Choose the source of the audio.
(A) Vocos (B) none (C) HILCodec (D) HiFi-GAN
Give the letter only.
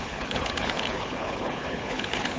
C